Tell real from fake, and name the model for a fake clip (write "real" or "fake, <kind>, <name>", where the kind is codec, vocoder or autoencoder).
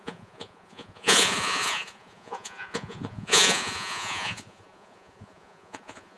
fake, vocoder, Vocos